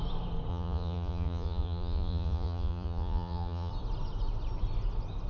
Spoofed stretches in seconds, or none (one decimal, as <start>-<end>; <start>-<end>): 0.5-3.7